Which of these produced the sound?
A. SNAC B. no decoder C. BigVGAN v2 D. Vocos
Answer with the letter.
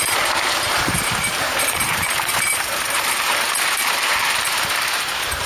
C